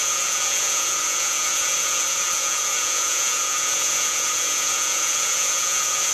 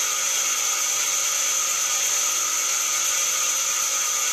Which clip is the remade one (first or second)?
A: first